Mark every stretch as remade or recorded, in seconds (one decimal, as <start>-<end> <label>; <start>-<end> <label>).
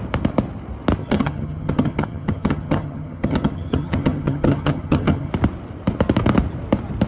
0.0-1.0 recorded; 1.0-5.3 remade; 5.3-7.1 recorded